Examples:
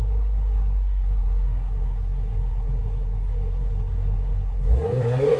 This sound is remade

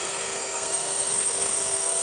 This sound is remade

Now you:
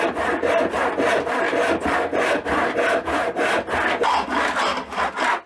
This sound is recorded